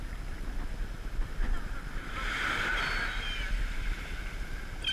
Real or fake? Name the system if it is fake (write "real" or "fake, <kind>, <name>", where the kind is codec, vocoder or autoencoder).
real